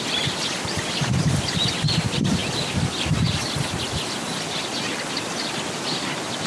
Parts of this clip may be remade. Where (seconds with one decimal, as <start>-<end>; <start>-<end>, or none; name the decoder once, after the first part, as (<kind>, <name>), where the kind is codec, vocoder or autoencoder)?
none

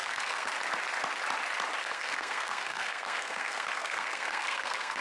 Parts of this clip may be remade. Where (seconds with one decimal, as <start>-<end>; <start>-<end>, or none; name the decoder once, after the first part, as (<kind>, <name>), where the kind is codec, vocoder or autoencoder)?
0.0-0.5 (codec, SNAC); 1.8-5.0

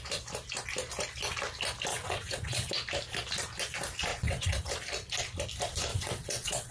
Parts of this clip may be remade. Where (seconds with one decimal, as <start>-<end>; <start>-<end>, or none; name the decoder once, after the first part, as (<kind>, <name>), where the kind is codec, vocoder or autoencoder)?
1.9-2.7 (vocoder, WaveNeXt); 4.1-4.7; 5.9-6.7

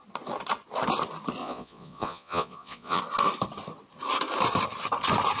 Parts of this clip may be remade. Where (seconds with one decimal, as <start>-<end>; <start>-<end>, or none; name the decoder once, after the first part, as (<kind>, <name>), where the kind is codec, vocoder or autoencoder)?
1.4-3.0 (vocoder, Vocos)

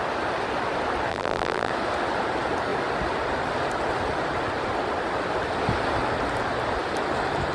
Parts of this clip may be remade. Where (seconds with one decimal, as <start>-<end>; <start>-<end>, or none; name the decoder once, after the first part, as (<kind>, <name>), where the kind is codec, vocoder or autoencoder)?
1.1-1.7 (vocoder, BigVGAN v2)

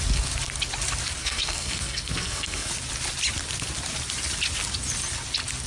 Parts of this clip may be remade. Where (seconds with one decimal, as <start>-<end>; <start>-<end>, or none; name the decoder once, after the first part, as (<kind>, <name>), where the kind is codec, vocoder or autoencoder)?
1.2-2.7 (codec, SNAC)